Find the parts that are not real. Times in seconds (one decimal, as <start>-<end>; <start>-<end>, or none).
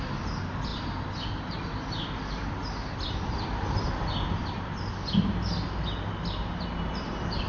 none